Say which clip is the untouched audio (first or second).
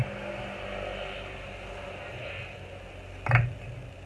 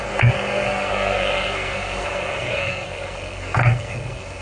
first